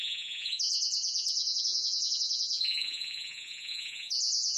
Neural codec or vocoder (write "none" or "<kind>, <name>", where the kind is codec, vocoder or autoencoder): vocoder, Vocos